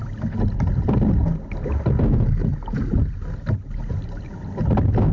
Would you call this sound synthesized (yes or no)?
no